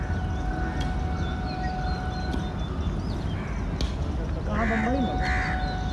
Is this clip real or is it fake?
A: real